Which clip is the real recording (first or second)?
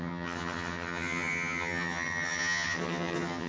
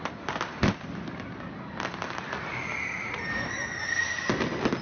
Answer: second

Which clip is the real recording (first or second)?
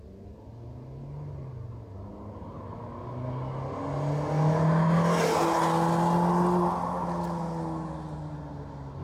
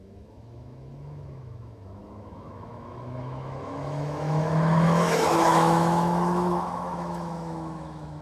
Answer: first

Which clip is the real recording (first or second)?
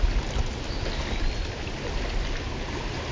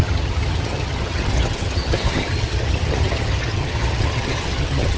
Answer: first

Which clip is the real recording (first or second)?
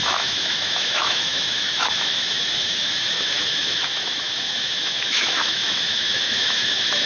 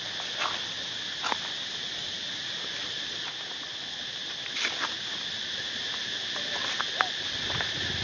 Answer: second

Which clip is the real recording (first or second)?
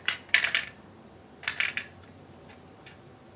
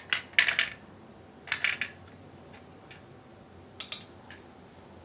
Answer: second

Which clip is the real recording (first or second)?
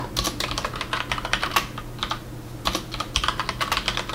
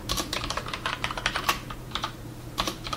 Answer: first